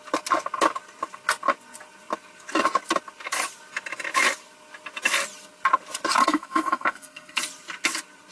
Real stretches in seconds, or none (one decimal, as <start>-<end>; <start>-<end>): 0.0-6.2; 7.4-8.3